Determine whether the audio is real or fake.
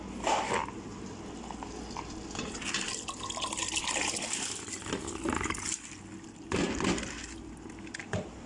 real